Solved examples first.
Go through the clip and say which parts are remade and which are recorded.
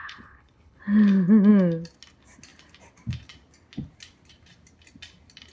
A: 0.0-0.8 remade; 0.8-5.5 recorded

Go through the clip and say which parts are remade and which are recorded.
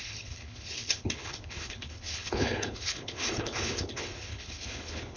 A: 0.0-5.2 remade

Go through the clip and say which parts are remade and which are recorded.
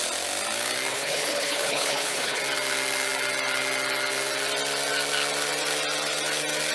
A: 0.0-0.9 recorded; 0.9-2.4 remade; 2.4-6.7 recorded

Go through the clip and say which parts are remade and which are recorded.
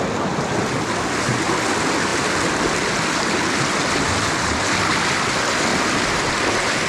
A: 0.0-6.9 recorded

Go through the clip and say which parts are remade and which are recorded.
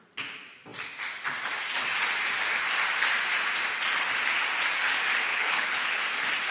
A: 0.0-5.3 recorded; 5.3-6.0 remade; 6.0-6.5 recorded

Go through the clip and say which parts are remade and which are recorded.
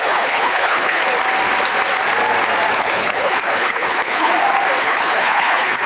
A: 0.0-1.0 remade; 1.0-2.7 recorded; 2.7-4.3 remade; 4.3-4.8 recorded; 4.8-5.9 remade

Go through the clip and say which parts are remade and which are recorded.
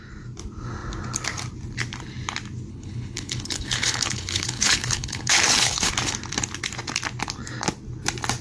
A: 0.0-2.7 recorded; 2.7-5.9 remade; 5.9-8.4 recorded